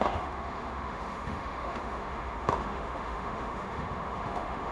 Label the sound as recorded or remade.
remade